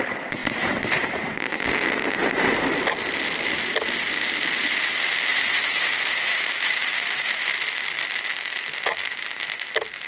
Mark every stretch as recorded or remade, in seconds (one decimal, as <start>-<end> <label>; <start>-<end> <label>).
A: 0.0-0.4 recorded; 0.4-1.4 remade; 1.4-5.3 recorded; 5.3-7.5 remade; 7.5-10.1 recorded